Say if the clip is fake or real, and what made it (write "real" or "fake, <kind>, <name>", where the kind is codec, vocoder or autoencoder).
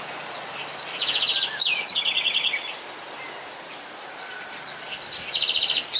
real